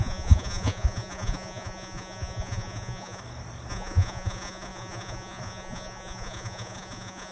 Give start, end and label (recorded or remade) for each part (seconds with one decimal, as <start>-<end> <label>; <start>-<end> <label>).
0.0-3.2 remade; 3.2-3.7 recorded; 3.7-7.3 remade